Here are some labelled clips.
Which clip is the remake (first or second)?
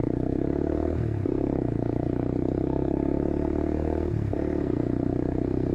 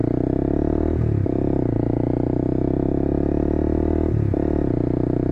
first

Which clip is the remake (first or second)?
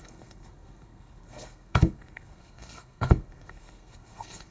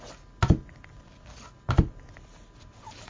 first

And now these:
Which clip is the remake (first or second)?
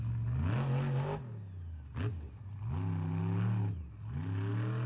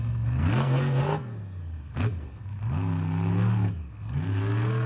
second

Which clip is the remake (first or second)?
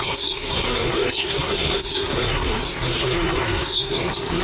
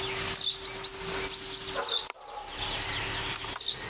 first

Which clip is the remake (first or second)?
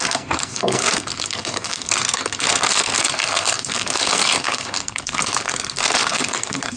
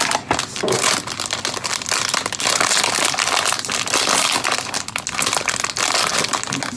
first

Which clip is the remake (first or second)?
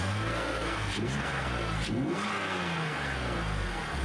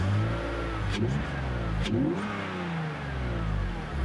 first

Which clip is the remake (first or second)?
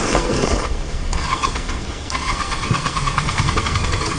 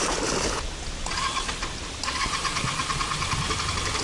first